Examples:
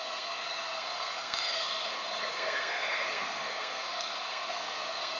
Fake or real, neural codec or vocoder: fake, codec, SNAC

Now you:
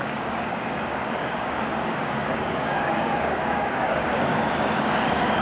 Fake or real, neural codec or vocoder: fake, codec, DAC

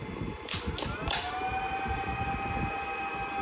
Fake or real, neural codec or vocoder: real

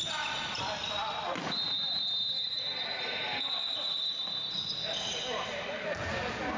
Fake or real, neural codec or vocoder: real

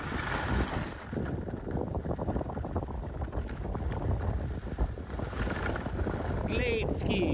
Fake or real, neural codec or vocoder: real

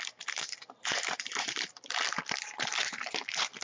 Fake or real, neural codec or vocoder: real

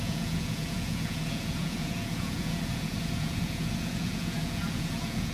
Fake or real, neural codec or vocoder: fake, vocoder, Vocos